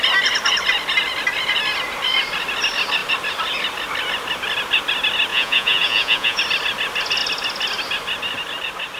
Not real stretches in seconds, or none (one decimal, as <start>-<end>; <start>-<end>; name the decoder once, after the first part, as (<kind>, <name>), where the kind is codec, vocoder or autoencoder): 5.3-6.4 (vocoder, Vocos)